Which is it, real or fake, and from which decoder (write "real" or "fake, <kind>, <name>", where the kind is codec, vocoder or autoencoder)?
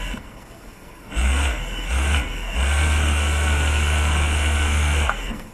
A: fake, codec, SNAC